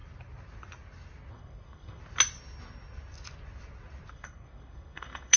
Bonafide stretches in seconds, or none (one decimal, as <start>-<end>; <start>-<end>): 0.0-1.3; 2.0-4.1